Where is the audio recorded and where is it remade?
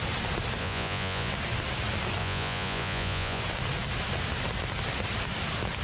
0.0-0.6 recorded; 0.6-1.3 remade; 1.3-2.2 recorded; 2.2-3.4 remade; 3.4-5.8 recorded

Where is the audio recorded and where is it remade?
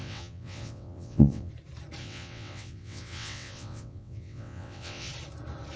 0.0-1.5 remade; 1.5-2.0 recorded; 2.0-5.1 remade; 5.1-5.8 recorded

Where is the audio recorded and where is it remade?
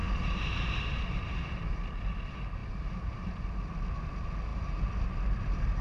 0.0-1.7 remade; 1.7-2.6 recorded; 2.6-3.4 remade; 3.4-5.8 recorded